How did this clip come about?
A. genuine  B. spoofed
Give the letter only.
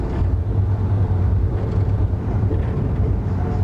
A